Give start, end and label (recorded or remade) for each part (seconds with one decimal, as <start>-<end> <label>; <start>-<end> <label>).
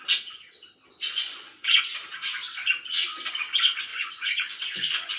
0.0-0.9 recorded; 0.9-1.8 remade; 1.8-3.9 recorded; 3.9-5.2 remade